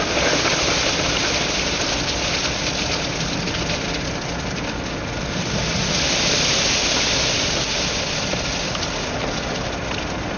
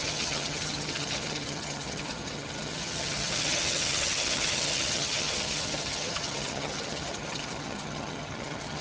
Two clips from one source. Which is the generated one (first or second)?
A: second